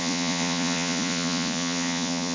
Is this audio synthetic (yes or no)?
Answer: yes